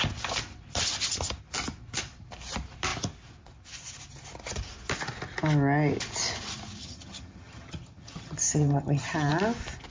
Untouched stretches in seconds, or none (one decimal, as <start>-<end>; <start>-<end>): 0.0-6.8; 9.3-9.9